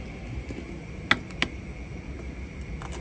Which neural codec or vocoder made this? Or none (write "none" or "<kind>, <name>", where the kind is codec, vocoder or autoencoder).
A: none